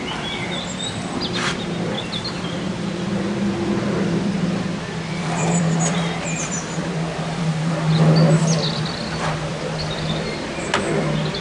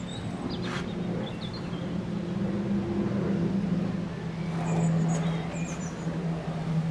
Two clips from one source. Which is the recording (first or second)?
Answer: second